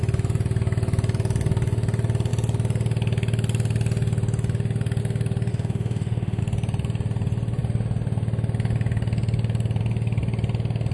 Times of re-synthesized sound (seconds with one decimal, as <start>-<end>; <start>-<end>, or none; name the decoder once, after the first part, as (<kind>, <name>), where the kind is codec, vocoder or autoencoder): 5.5-6.4 (autoencoder, DAC-VAE)